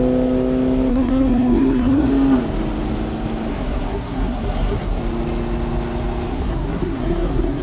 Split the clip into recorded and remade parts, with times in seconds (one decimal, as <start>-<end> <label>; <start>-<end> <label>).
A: 0.0-0.9 recorded; 0.9-2.1 remade; 2.1-3.5 recorded; 3.5-5.0 remade; 5.0-6.3 recorded; 6.3-7.6 remade